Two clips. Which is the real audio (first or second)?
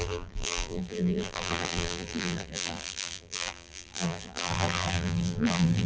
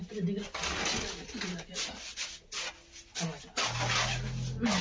second